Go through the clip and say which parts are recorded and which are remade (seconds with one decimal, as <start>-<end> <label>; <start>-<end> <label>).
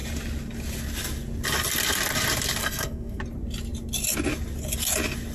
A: 0.0-2.6 recorded; 2.6-3.2 remade; 3.2-5.3 recorded